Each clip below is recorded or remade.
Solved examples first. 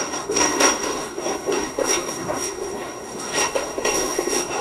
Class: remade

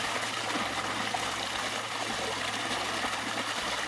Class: recorded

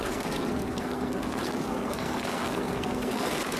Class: remade